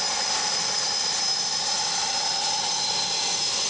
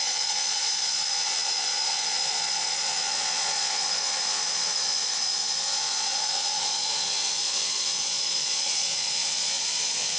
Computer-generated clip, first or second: second